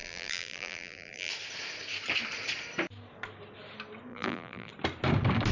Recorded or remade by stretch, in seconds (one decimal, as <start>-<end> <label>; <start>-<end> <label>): 0.0-1.3 remade; 1.3-4.1 recorded; 4.1-4.7 remade; 4.7-5.5 recorded